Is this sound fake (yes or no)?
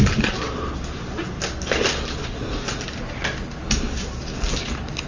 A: no